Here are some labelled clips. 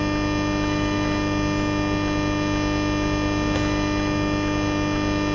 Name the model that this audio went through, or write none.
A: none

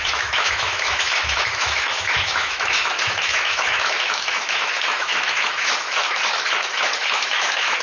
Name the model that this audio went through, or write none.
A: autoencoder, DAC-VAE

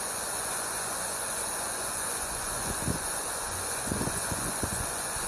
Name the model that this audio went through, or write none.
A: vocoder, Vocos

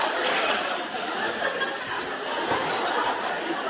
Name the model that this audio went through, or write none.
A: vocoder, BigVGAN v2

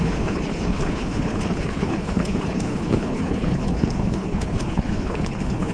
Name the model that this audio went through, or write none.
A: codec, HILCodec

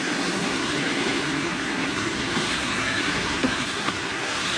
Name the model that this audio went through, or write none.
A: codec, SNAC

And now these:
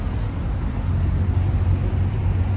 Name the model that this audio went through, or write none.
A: none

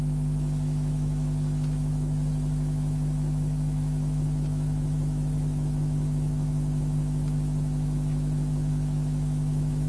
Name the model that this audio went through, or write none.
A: autoencoder, DAC-VAE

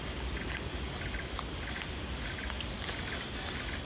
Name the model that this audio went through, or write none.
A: none